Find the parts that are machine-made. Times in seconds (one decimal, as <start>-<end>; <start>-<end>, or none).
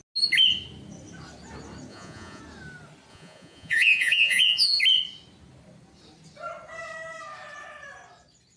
1.9-2.4; 3.1-4.8